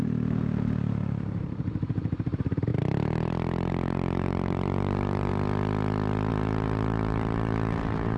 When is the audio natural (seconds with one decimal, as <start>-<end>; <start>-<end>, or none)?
5.3-6.3